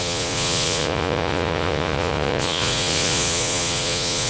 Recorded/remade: remade